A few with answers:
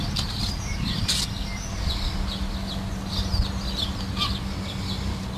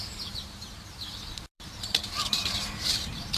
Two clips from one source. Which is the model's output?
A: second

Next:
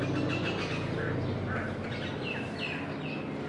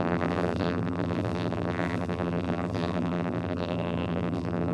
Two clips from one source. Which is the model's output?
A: second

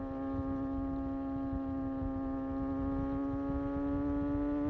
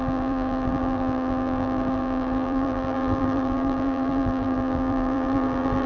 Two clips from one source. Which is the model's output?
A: second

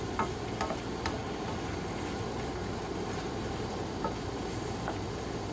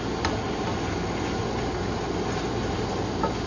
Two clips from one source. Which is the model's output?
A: first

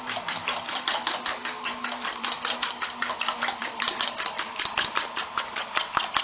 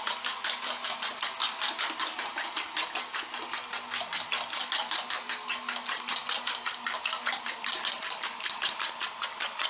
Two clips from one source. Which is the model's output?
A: first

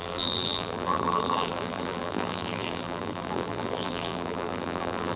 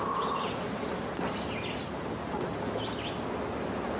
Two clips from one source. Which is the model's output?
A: first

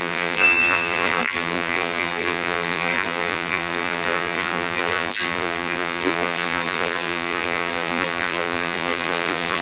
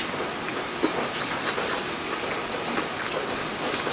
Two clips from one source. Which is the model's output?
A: first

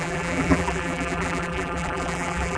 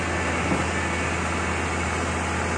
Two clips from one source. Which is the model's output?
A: first